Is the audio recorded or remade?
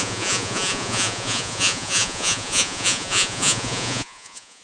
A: remade